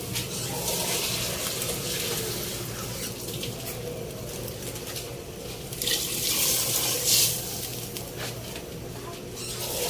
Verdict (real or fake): real